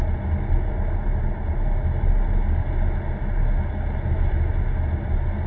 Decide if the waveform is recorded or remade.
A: recorded